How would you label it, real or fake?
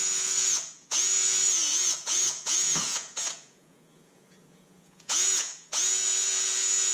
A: fake